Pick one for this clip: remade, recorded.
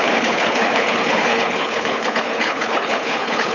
remade